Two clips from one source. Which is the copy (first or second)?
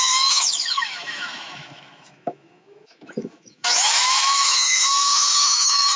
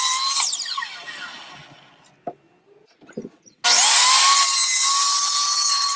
first